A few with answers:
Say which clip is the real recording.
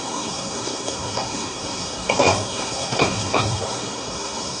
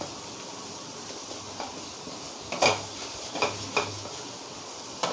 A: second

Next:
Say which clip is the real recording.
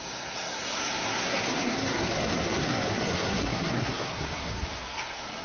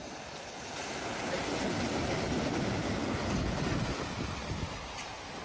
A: second